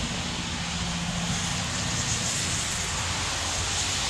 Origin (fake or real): real